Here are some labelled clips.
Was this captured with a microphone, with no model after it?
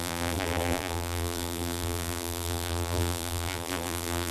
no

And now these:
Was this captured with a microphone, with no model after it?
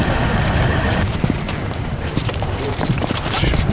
no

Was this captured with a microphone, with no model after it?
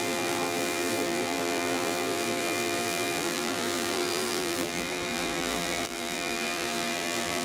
no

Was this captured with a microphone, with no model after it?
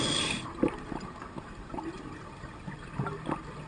yes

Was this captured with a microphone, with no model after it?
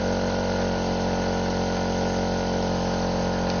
yes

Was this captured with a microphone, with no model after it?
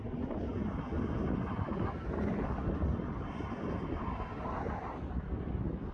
yes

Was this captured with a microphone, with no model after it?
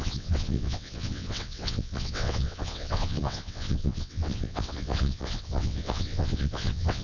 no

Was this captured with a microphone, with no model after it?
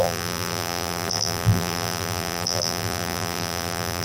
no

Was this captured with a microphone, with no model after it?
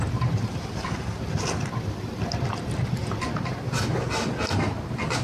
yes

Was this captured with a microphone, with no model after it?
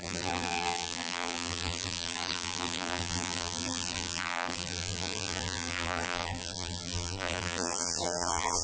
no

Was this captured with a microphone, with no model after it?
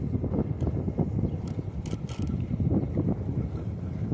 yes